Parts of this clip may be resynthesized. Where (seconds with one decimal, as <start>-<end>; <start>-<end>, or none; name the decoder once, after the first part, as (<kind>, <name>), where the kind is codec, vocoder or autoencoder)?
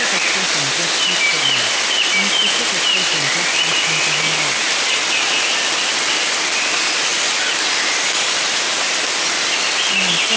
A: none